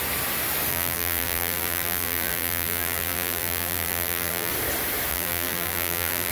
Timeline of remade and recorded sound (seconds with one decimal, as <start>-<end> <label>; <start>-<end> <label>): 0.0-0.7 recorded; 0.7-4.5 remade; 4.5-5.1 recorded; 5.1-6.3 remade